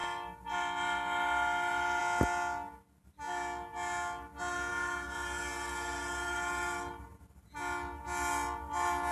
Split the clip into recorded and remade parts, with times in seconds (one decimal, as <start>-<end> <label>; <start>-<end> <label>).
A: 0.0-2.0 remade; 2.0-4.7 recorded; 4.7-7.2 remade; 7.2-9.1 recorded